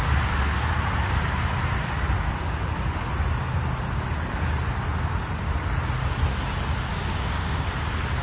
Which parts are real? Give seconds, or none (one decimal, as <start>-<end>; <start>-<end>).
0.0-6.9; 7.7-8.2